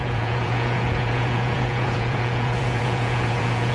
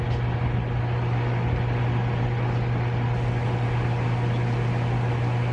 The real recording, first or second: second